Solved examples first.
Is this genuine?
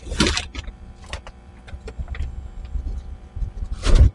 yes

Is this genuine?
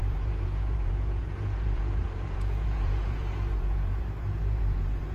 no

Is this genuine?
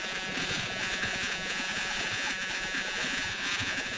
no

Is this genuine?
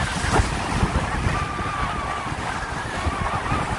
yes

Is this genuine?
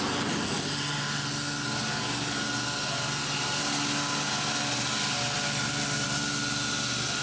yes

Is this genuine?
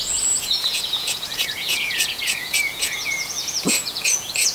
no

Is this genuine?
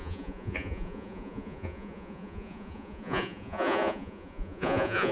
no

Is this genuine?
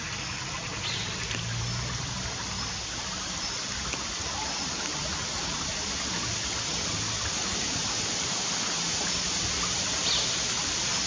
yes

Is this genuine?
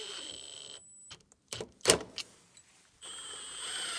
yes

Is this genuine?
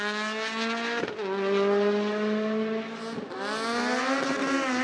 yes